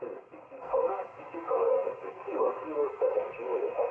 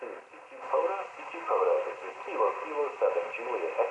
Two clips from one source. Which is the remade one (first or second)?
first